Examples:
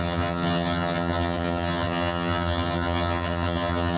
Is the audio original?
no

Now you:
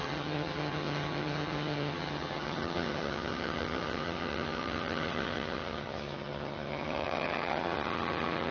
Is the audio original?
no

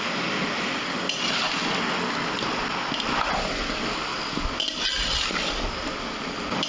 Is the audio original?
yes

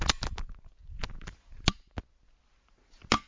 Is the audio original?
yes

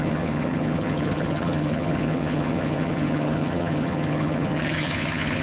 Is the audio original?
no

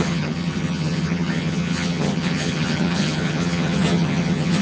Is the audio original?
no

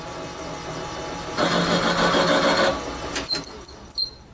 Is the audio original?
yes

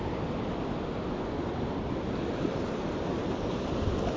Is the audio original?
yes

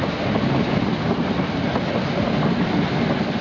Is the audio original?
yes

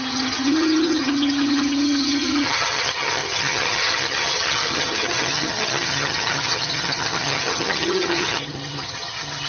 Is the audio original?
no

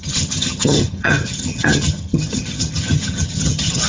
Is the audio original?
no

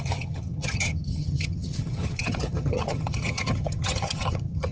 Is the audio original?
no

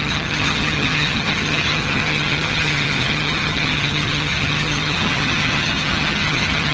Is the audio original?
no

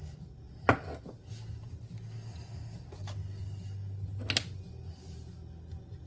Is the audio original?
yes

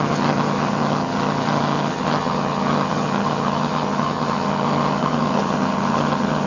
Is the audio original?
no